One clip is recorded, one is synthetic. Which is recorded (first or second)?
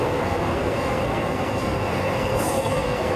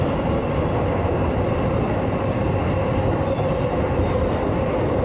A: second